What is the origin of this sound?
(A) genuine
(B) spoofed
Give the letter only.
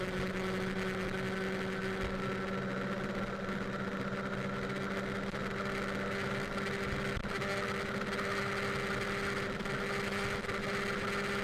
A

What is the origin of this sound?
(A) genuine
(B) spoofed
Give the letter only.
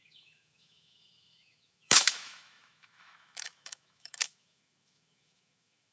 B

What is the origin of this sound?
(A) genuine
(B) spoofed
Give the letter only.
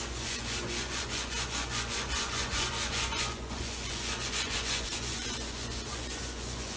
B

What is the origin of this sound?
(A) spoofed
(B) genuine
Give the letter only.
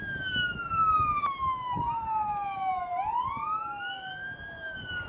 B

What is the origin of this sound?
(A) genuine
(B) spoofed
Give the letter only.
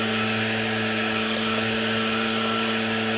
A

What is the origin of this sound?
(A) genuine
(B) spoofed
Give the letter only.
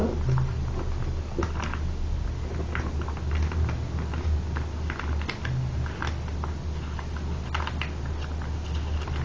A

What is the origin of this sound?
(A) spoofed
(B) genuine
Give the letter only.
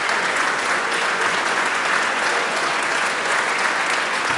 A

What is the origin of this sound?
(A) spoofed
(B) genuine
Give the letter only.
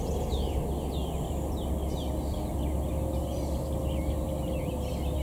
B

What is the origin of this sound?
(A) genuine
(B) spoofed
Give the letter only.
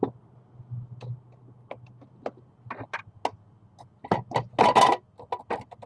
A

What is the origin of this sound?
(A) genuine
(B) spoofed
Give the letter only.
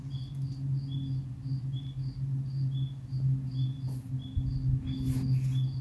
A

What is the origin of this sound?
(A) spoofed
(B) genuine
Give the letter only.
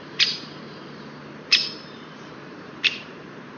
A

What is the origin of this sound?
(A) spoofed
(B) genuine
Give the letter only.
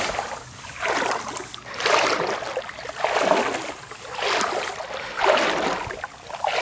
B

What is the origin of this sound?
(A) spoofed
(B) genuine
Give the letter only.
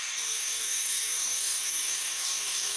A